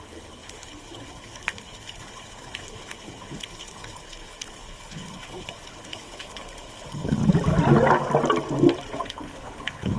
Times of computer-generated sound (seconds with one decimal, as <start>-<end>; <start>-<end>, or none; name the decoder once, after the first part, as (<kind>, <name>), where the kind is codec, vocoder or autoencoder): 0.0-7.2 (codec, HILCodec); 9.0-10.0